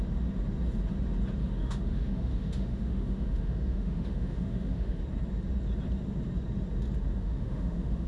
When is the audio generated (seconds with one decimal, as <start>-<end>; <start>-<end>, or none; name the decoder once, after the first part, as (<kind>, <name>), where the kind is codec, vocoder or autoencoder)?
1.4-5.0 (autoencoder, DAC-VAE); 7.2-8.1